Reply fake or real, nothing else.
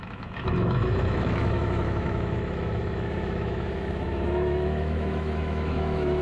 fake